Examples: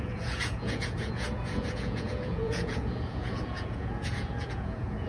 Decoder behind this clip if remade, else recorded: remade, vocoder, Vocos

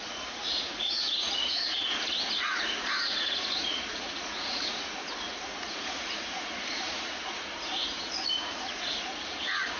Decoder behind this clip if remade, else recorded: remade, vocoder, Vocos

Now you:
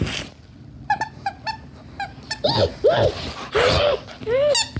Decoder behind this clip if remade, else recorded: recorded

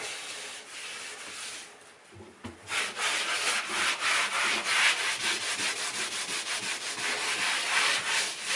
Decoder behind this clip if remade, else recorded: recorded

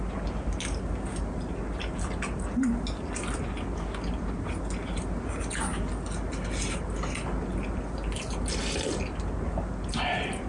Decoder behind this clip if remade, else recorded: recorded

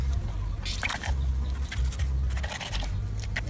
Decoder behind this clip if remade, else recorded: recorded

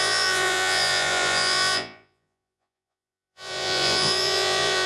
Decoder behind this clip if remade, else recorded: remade, vocoder, Vocos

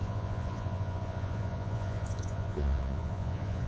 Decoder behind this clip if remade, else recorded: remade, vocoder, Vocos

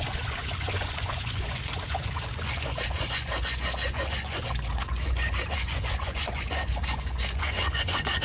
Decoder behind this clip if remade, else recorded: remade, vocoder, Vocos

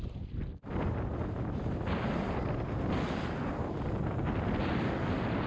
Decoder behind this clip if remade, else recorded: recorded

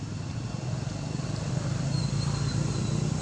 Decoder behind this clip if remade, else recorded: recorded